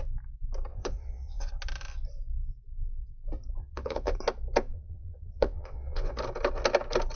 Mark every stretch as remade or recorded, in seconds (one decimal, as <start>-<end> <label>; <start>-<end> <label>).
0.0-0.7 recorded; 0.7-1.5 remade; 1.5-3.6 recorded; 3.6-4.2 remade; 4.2-4.7 recorded; 4.7-6.1 remade; 6.1-7.2 recorded